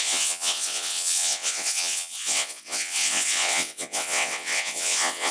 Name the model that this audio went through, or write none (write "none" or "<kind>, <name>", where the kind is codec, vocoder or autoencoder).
vocoder, WaveNeXt